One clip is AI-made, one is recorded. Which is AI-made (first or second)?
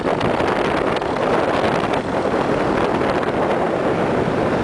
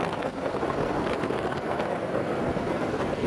second